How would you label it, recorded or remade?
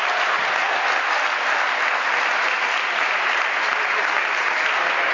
recorded